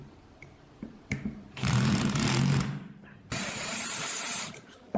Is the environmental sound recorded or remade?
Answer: remade